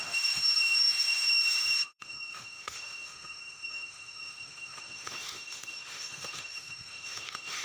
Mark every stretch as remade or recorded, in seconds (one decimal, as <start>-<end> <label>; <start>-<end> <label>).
0.0-7.6 remade